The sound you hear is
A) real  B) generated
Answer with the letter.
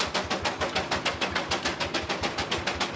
A